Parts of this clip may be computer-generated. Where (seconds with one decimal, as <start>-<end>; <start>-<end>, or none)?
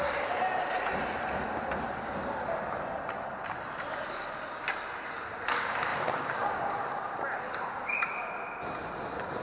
5.9-6.9